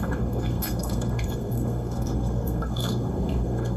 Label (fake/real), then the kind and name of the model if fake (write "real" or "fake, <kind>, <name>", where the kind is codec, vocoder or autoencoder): fake, codec, SNAC